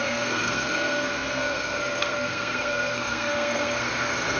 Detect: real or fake fake